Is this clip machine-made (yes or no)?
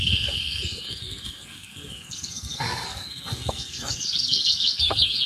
yes